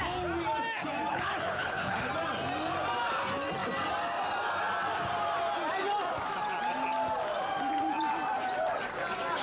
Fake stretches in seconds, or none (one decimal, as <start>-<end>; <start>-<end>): 1.1-2.1